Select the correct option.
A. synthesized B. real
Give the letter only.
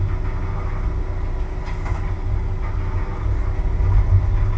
B